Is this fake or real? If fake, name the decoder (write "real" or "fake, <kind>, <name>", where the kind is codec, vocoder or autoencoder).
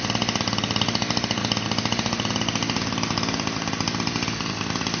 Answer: real